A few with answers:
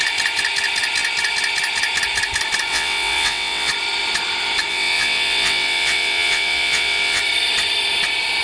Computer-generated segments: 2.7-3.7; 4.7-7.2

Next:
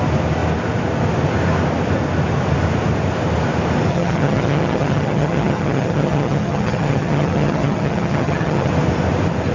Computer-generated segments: 3.9-8.7